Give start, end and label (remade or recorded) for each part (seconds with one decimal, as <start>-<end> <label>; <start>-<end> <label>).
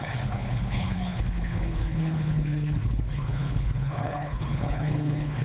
0.0-5.4 remade